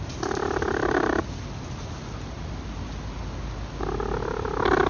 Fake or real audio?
real